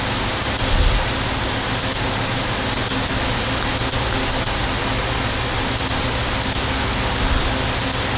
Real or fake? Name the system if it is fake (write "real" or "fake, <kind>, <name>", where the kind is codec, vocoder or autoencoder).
real